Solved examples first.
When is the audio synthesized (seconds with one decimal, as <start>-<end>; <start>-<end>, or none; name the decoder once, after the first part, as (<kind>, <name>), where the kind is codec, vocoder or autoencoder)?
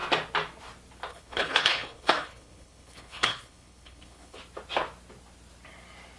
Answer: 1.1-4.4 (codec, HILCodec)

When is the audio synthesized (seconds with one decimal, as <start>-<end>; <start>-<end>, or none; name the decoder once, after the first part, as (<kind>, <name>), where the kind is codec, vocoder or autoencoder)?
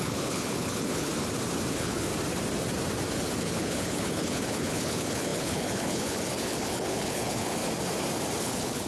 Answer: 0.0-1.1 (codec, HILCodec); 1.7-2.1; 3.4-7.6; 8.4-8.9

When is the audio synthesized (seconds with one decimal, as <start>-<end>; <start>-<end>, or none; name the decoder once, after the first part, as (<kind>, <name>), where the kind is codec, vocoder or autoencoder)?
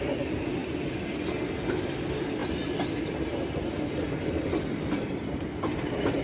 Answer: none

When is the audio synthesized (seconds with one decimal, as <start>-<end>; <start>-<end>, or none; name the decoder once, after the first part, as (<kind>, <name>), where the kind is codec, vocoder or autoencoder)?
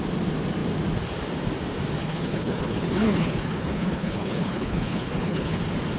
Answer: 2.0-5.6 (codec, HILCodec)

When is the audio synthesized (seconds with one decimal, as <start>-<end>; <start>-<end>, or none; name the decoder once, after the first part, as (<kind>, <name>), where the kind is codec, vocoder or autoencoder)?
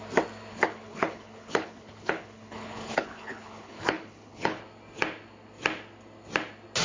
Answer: 0.5-4.6 (codec, HILCodec)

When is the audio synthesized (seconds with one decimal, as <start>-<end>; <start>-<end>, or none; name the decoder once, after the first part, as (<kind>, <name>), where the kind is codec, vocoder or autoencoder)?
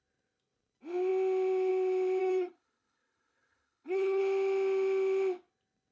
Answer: 2.2-4.2 (codec, HILCodec)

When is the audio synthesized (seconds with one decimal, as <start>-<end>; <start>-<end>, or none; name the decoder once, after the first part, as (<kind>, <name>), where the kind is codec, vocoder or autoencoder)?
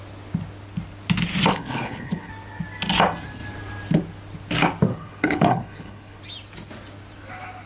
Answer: 1.5-2.3 (codec, HILCodec); 4.9-6.2